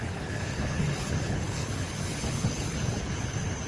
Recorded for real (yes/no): no